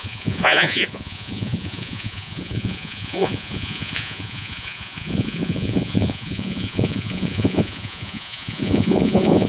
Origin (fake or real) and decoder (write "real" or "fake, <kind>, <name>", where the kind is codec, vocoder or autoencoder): fake, vocoder, Vocos